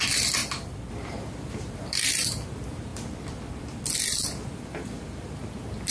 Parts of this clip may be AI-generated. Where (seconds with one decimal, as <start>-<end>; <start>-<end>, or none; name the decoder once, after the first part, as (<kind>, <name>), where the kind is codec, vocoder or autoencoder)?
0.0-0.4 (vocoder, BigVGAN v2); 0.9-5.9